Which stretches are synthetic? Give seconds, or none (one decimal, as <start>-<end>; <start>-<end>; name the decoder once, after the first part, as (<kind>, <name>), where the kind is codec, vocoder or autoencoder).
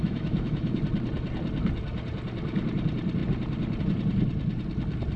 0.0-0.8 (autoencoder, DAC-VAE)